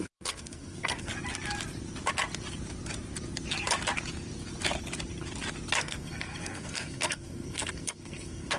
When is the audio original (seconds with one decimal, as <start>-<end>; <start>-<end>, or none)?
1.1-5.8